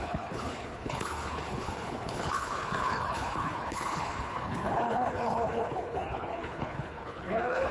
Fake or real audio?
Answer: fake